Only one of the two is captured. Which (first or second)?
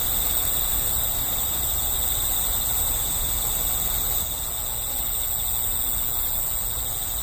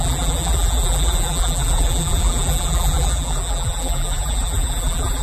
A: first